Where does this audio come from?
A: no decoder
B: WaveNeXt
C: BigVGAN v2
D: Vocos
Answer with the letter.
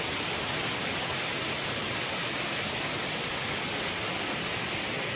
A